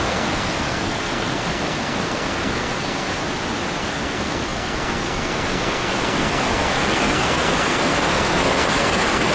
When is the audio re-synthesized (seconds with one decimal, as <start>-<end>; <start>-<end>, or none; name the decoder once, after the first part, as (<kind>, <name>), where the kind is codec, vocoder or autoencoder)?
0.0-3.2 (codec, SNAC); 3.8-9.3